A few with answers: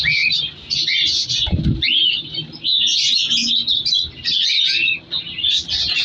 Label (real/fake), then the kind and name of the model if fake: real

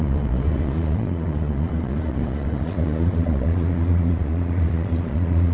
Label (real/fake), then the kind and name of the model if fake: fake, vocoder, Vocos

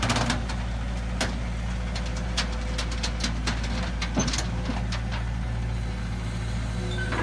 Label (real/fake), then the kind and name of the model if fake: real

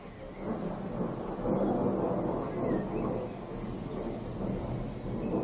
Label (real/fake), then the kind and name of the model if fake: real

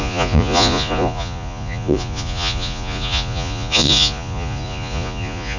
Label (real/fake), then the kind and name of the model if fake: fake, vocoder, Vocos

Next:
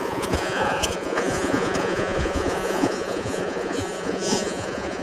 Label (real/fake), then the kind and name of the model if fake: fake, vocoder, Vocos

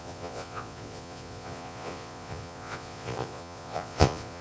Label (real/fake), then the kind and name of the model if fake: fake, vocoder, Vocos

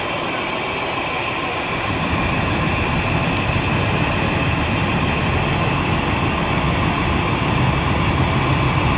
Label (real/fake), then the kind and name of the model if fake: real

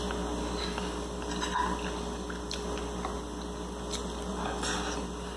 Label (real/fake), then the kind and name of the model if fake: real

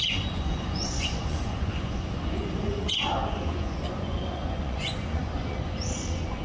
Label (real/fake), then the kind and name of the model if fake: fake, vocoder, Vocos